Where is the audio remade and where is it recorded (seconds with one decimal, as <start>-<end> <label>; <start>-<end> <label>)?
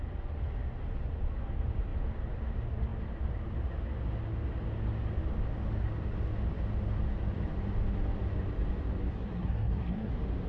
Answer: 0.0-9.1 recorded; 9.1-10.1 remade; 10.1-10.5 recorded